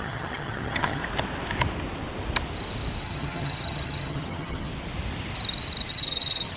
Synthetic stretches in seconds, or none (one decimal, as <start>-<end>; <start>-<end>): 0.0-1.0; 3.0-4.7; 5.9-6.6